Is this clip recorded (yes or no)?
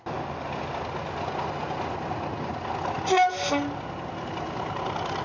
yes